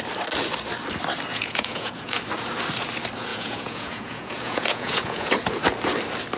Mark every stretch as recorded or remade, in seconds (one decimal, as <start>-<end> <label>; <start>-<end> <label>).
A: 0.0-1.3 recorded; 1.3-2.2 remade; 2.2-3.3 recorded; 3.3-5.3 remade; 5.3-6.4 recorded